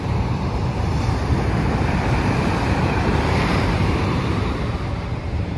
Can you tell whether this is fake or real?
fake